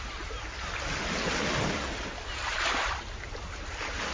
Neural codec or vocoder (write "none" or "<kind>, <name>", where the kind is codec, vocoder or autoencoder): none